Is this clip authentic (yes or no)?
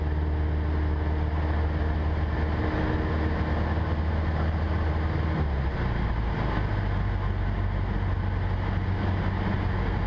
yes